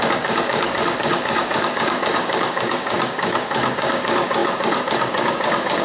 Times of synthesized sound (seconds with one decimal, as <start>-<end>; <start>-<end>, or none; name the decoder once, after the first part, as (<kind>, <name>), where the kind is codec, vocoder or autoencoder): 0.0-5.8 (codec, DAC)